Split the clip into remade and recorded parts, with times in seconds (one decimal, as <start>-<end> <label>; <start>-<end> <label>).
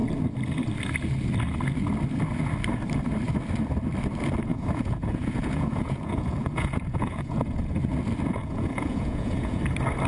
0.0-4.5 recorded; 4.5-7.9 remade; 7.9-8.4 recorded; 8.4-9.6 remade; 9.6-10.1 recorded